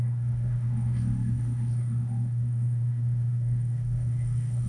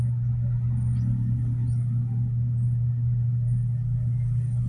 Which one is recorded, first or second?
second